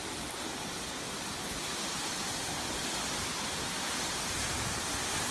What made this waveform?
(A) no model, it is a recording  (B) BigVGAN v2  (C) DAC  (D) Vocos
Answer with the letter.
A